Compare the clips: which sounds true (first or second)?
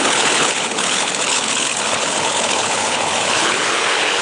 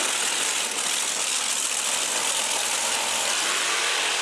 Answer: second